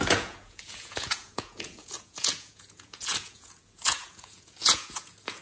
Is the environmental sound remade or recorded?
remade